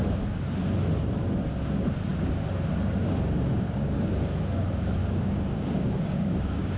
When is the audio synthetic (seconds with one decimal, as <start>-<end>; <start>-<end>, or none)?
3.5-4.1; 5.0-6.8